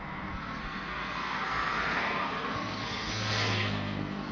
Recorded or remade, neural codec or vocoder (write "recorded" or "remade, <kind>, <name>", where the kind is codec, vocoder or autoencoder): remade, codec, SNAC